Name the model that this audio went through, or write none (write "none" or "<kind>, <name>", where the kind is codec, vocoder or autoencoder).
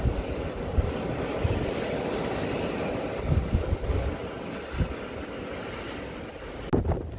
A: none